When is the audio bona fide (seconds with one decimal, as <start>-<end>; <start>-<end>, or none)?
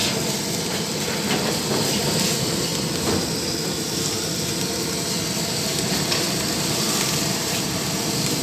0.0-1.5; 2.7-5.9